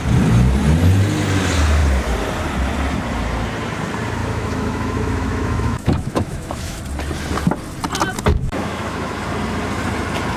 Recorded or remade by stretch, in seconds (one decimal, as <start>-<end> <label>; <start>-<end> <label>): 0.0-4.2 recorded; 4.2-6.8 remade; 6.8-8.3 recorded; 8.3-9.2 remade; 9.2-10.4 recorded